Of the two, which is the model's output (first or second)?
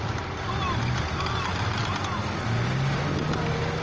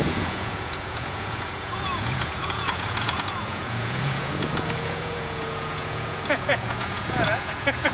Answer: second